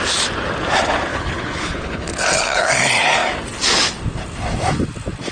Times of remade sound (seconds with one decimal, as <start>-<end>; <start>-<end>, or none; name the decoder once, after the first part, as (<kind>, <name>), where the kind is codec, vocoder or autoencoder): 1.1-2.7 (codec, HILCodec)